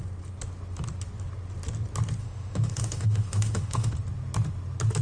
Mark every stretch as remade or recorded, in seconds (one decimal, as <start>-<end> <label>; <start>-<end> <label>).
0.0-2.2 recorded; 2.2-3.9 remade; 3.9-5.0 recorded